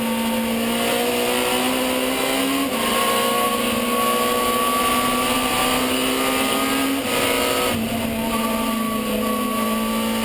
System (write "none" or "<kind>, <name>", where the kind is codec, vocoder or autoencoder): none